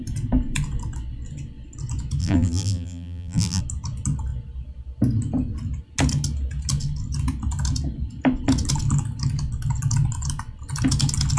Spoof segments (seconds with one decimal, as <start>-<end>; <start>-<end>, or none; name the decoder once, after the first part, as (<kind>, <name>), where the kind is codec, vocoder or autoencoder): 2.2-3.6 (vocoder, BigVGAN v2)